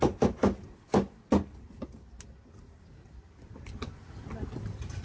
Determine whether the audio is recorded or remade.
recorded